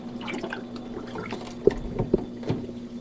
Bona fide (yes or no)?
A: yes